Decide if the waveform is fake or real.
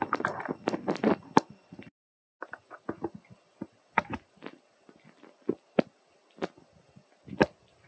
real